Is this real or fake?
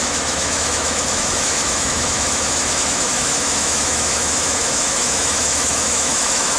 fake